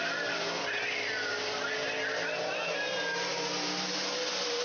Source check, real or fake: real